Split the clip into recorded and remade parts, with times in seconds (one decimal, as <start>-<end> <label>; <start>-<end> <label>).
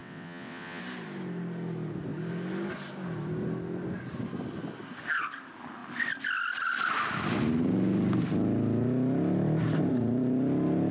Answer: 0.0-0.8 remade; 0.8-10.9 recorded